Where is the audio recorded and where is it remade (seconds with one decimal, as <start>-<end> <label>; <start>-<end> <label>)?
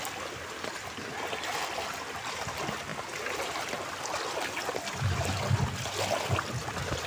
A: 0.0-7.1 recorded